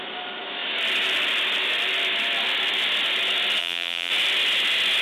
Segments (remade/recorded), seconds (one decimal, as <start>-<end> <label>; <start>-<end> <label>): 0.0-3.6 recorded; 3.6-4.1 remade; 4.1-5.0 recorded